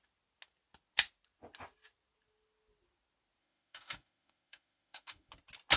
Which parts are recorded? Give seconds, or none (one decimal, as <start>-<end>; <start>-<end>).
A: 0.0-3.4; 5.3-5.8